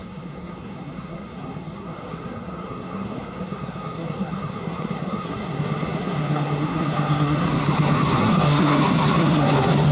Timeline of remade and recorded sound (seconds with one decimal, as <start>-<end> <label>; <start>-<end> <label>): 0.0-9.9 remade